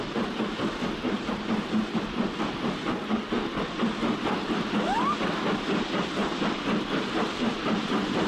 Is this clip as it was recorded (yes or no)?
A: yes